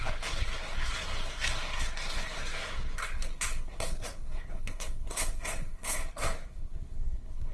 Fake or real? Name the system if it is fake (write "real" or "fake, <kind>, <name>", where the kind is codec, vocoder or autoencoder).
fake, codec, SNAC